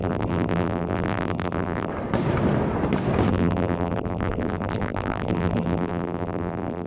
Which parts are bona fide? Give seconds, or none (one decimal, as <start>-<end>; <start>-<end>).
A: 1.9-3.3